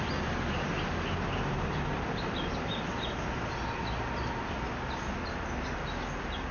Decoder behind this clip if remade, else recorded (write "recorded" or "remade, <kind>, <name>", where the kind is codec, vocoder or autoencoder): recorded